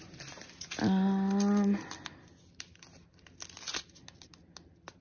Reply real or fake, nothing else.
real